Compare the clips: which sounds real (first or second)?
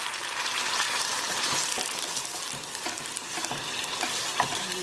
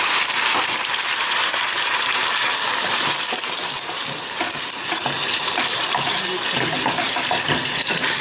first